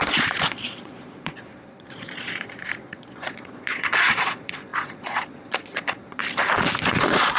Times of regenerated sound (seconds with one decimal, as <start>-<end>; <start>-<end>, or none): 0.0-6.2; 6.9-7.4